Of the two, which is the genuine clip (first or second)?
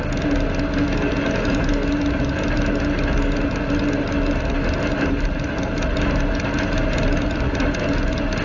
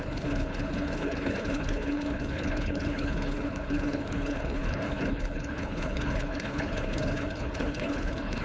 first